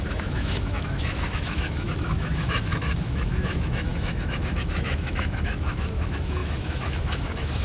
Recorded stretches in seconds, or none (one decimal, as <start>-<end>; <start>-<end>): none